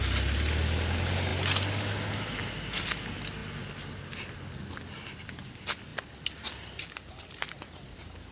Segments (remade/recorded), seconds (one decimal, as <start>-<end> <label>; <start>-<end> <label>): 0.0-8.3 recorded